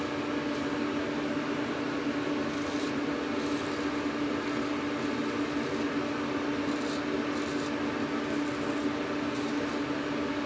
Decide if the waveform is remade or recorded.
recorded